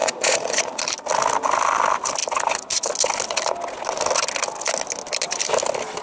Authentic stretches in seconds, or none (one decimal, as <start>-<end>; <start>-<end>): 0.8-6.0